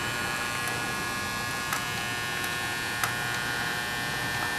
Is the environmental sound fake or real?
real